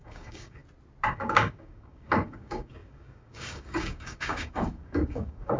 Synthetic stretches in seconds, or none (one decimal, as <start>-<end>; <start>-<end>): 0.0-0.6; 1.1-5.6